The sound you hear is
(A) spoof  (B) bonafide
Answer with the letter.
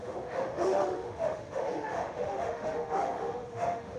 A